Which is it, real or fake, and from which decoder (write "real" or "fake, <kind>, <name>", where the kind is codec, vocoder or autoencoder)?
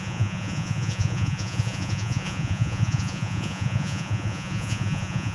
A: fake, vocoder, Vocos